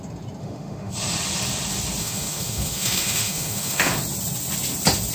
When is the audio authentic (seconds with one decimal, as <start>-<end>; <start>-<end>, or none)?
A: 0.0-0.4; 0.9-2.0; 3.9-5.1